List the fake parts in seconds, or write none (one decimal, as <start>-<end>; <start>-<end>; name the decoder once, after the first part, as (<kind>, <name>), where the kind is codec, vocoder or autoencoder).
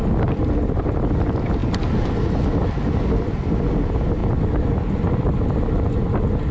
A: none